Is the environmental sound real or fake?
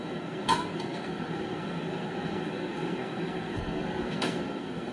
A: fake